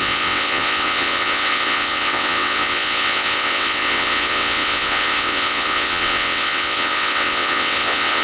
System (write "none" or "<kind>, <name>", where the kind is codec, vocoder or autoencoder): vocoder, WaveNeXt